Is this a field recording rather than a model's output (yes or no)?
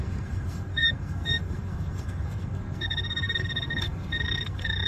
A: no